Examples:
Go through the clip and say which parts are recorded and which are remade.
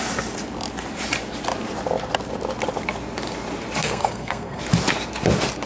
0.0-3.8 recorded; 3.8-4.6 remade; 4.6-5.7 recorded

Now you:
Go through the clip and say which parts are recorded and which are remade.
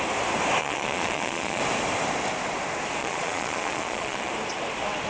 0.0-0.6 recorded; 0.6-1.6 remade; 1.6-3.0 recorded; 3.0-4.3 remade; 4.3-5.1 recorded